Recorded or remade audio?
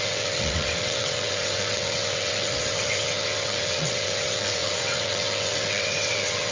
remade